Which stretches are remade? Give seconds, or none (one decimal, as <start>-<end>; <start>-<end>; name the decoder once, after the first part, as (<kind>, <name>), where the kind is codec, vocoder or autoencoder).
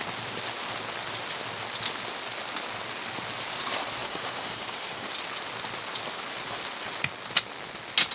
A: 4.0-5.1 (codec, DAC)